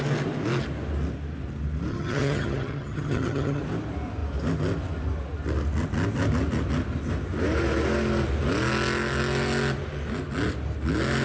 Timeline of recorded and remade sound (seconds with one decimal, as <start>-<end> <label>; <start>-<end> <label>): 0.0-1.9 recorded; 1.9-3.6 remade; 3.6-11.2 recorded